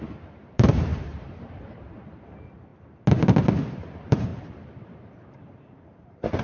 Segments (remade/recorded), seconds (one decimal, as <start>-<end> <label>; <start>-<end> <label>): 0.0-2.7 remade; 2.7-3.7 recorded; 3.7-4.3 remade; 4.3-5.2 recorded; 5.2-6.4 remade